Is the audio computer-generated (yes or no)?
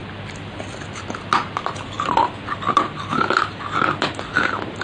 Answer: no